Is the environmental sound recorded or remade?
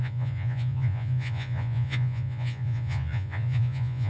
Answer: remade